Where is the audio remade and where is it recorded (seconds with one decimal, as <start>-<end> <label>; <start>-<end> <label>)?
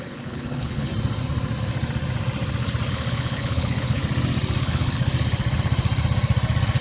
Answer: 0.0-0.9 remade; 0.9-2.9 recorded; 2.9-4.0 remade; 4.0-4.6 recorded; 4.6-5.1 remade; 5.1-6.8 recorded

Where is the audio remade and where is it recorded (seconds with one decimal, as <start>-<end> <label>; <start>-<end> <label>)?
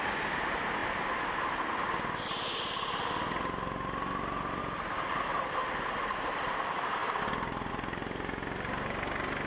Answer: 0.0-9.5 recorded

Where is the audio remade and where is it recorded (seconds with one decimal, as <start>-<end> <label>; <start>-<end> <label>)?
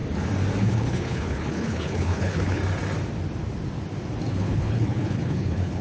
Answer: 0.0-0.6 recorded; 0.6-2.6 remade; 2.6-4.3 recorded; 4.3-5.8 remade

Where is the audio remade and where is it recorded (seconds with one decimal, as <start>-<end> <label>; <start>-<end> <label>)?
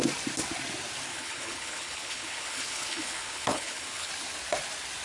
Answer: 0.0-1.1 recorded; 1.1-4.1 remade; 4.1-5.0 recorded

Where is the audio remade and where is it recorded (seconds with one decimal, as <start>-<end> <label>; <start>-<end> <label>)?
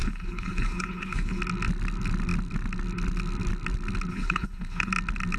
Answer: 0.0-1.4 remade; 1.4-4.1 recorded; 4.1-4.9 remade; 4.9-5.4 recorded